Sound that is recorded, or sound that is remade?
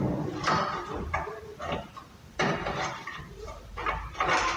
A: remade